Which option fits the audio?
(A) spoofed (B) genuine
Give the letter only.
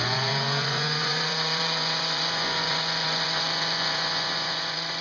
A